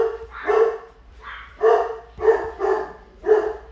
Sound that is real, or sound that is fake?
real